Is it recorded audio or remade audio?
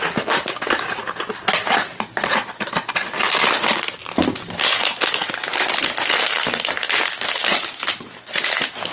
recorded